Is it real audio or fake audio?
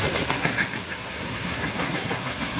fake